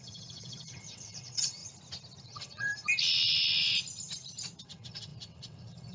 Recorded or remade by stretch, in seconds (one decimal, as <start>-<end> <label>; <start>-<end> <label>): 0.0-1.6 remade; 1.6-2.2 recorded; 2.2-2.7 remade; 2.7-4.6 recorded; 4.6-5.9 remade